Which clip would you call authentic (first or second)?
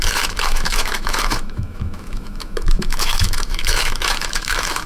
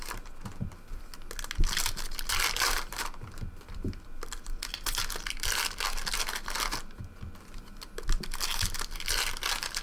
second